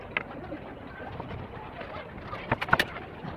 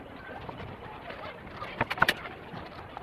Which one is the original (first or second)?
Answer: first